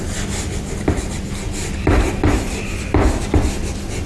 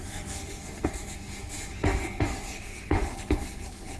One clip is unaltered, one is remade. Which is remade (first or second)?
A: second